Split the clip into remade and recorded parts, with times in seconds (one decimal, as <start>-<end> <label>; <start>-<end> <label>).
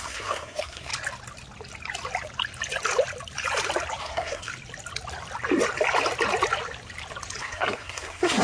0.0-0.9 remade; 0.9-4.0 recorded; 4.0-4.5 remade; 4.5-7.4 recorded; 7.4-8.4 remade